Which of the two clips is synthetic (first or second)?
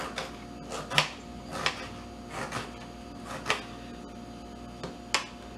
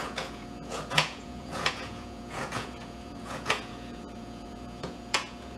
second